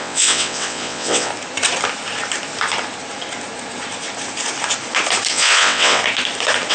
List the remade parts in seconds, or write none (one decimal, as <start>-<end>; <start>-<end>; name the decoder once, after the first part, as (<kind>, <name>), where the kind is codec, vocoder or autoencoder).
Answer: 0.0-1.3 (vocoder, WaveNeXt); 5.3-6.0